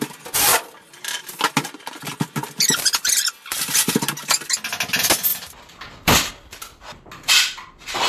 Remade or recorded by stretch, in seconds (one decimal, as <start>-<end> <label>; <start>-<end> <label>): 0.0-0.5 recorded; 0.5-1.3 remade; 1.3-5.3 recorded; 5.3-6.3 remade; 6.3-8.1 recorded